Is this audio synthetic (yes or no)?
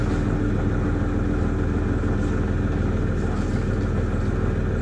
no